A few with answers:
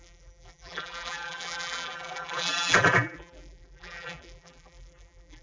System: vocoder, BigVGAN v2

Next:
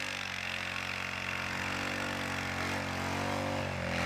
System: none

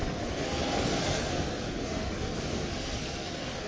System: codec, SNAC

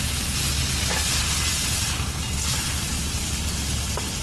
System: none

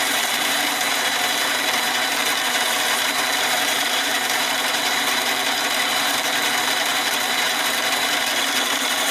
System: vocoder, BigVGAN v2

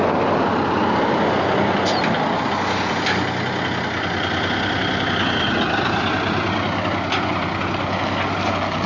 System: none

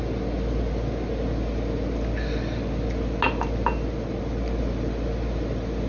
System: none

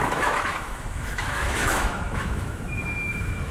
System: autoencoder, DAC-VAE